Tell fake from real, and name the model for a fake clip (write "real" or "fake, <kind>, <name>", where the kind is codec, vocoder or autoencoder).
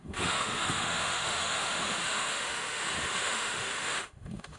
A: fake, autoencoder, DAC-VAE